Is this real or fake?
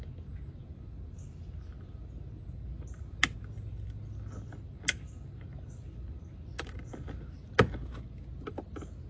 real